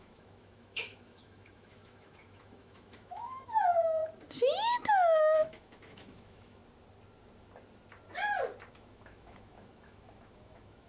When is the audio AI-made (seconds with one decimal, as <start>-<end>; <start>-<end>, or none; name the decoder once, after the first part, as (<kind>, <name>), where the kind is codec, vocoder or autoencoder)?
0.0-4.0 (autoencoder, DAC-VAE); 5.2-6.6; 8.7-10.9